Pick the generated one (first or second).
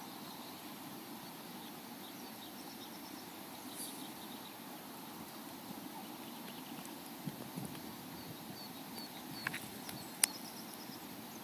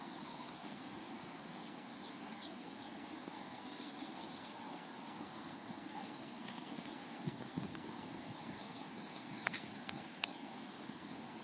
second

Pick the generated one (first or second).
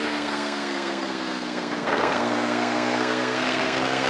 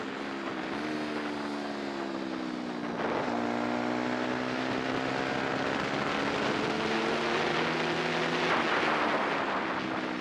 first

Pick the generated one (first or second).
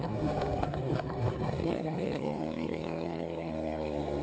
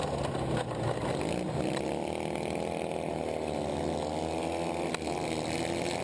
first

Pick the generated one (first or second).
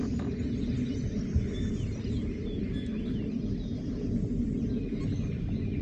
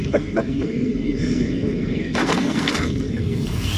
second